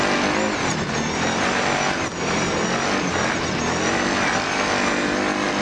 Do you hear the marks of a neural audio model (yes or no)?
no